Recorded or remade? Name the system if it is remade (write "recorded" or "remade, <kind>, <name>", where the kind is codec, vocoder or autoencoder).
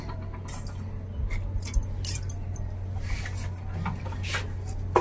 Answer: recorded